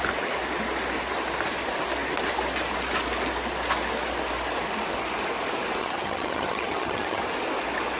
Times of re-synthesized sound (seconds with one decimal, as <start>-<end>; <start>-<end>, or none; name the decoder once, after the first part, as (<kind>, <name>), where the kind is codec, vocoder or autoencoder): 5.8-7.2 (vocoder, HiFi-GAN)